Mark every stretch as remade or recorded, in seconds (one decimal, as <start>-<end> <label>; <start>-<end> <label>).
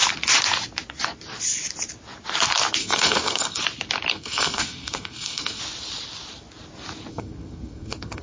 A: 0.0-2.8 recorded; 2.8-3.6 remade; 3.6-4.1 recorded; 4.1-5.6 remade; 5.6-7.1 recorded; 7.1-8.2 remade